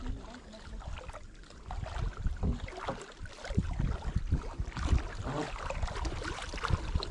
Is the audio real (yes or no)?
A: yes